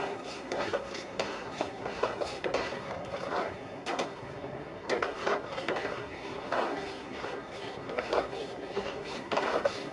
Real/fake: fake